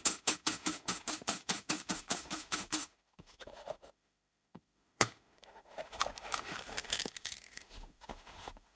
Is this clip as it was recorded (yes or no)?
no